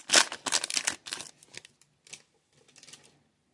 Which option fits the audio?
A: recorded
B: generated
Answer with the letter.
A